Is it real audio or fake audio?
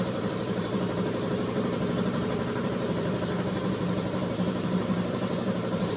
fake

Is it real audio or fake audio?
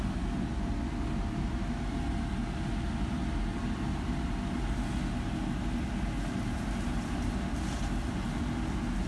real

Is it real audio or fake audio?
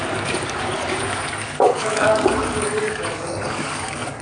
fake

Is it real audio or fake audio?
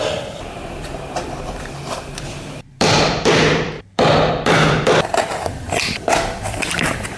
fake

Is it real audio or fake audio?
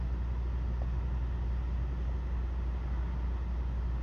real